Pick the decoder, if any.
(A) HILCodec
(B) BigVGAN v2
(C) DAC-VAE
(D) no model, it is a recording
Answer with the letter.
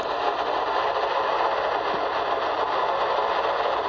D